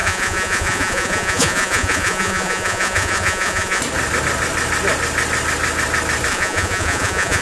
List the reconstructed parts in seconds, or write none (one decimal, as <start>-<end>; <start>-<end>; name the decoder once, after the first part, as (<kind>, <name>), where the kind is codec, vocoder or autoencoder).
0.0-3.8 (vocoder, Vocos); 6.3-7.4

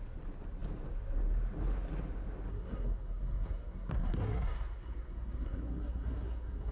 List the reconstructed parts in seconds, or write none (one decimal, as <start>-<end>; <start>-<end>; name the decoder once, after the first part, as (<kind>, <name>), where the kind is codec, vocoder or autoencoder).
2.5-6.7 (codec, SNAC)